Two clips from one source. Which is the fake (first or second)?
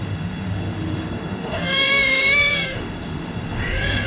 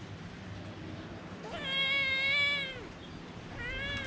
first